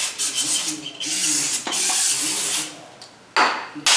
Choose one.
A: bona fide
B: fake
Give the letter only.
A